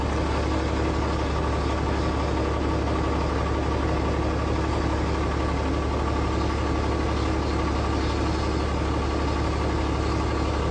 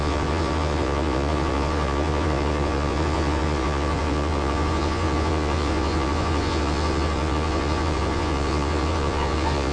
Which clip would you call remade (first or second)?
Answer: second